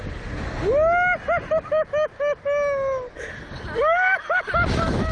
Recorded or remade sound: recorded